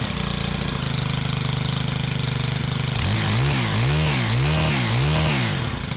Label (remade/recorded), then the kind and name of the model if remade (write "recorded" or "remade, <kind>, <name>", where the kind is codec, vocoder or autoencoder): recorded